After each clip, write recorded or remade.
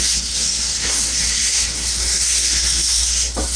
remade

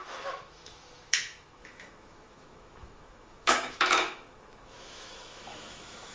remade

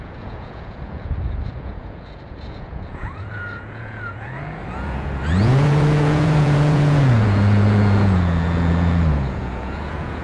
remade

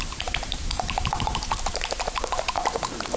remade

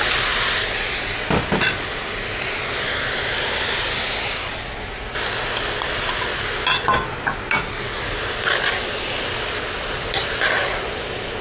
recorded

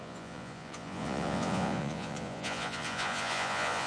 remade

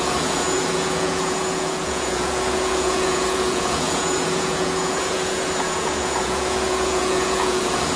remade